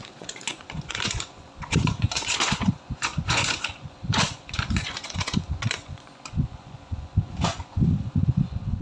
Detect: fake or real fake